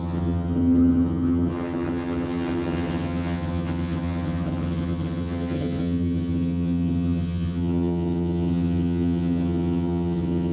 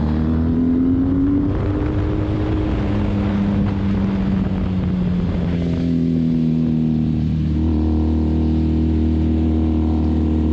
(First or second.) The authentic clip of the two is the second